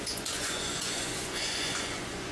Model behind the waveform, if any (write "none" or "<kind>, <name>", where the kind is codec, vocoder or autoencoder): vocoder, Vocos